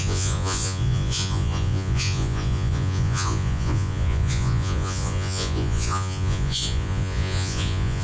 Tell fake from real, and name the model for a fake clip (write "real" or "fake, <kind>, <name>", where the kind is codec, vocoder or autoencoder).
fake, vocoder, Vocos